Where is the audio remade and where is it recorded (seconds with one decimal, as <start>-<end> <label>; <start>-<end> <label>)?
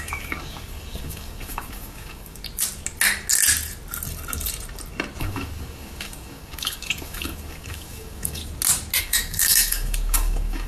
0.0-2.4 remade; 2.4-5.2 recorded; 5.2-8.4 remade; 8.4-9.0 recorded; 9.0-10.7 remade